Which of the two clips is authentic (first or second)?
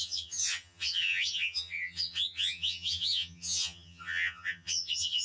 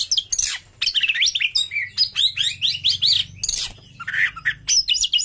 second